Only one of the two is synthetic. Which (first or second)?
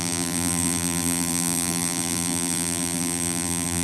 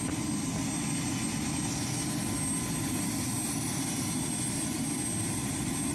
first